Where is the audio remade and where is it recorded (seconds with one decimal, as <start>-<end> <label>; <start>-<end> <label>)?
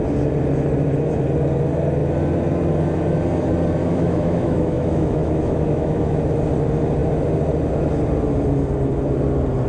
0.0-3.8 recorded; 3.8-6.1 remade; 6.1-9.7 recorded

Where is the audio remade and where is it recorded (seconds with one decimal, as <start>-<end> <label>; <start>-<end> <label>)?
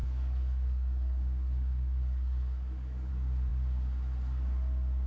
0.0-3.1 remade; 3.1-5.1 recorded